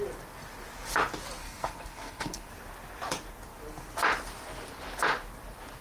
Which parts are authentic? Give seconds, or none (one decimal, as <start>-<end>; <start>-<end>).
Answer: 0.0-1.4; 2.5-5.8